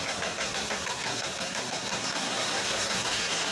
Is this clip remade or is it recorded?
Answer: remade